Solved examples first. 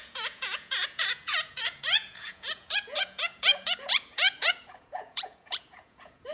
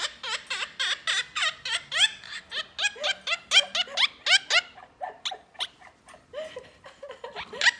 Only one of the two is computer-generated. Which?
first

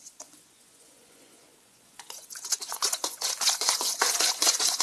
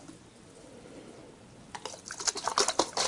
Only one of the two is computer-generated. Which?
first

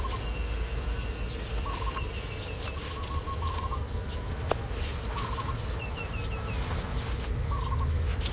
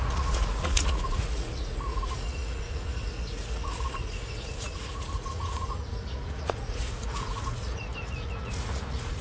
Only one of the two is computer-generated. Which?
second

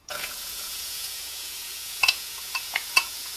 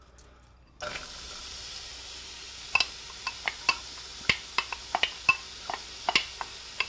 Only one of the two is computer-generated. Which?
first